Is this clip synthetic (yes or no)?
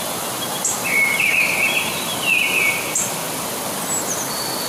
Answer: no